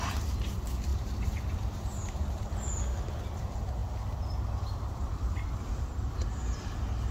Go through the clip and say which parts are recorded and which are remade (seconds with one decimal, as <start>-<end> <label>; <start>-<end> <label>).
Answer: 0.0-0.9 recorded; 0.9-2.4 remade; 2.4-7.1 recorded